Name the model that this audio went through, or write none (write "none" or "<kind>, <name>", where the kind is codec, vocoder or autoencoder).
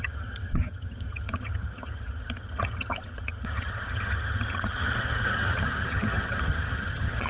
vocoder, HiFi-GAN